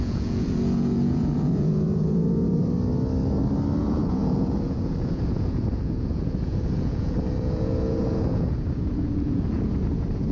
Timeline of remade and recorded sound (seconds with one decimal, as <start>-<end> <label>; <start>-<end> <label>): 0.0-2.6 remade; 2.6-3.8 recorded; 3.8-10.3 remade